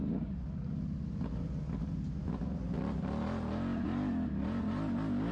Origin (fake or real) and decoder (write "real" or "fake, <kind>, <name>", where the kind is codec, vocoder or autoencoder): real